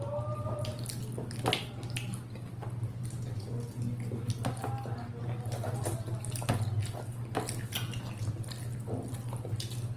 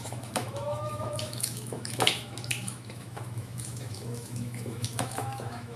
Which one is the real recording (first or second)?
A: first